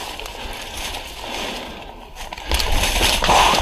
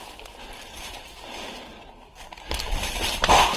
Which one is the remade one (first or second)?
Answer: first